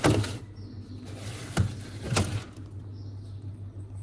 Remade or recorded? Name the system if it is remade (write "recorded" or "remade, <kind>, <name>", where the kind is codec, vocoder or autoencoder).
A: recorded